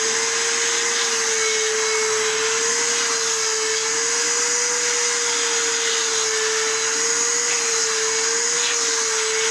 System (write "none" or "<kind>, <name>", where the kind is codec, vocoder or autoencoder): none